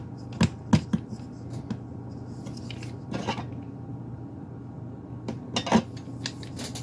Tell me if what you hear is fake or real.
real